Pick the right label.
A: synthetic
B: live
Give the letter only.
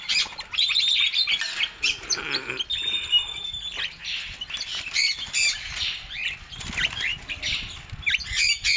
B